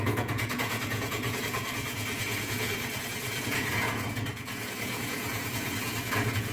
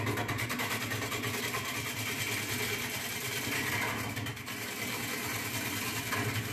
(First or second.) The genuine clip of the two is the second